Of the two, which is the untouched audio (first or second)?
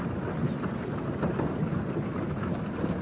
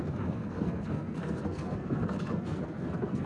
first